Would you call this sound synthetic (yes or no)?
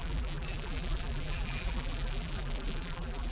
yes